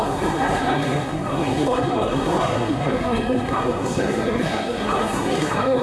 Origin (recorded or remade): remade